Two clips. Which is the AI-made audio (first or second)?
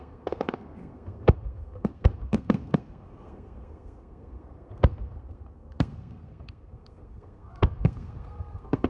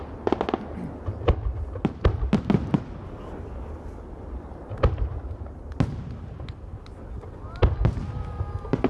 first